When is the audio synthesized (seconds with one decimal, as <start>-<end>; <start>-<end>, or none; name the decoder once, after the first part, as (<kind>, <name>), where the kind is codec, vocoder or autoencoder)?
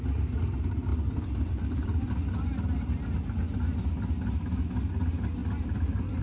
0.9-2.1 (vocoder, BigVGAN v2); 5.4-6.2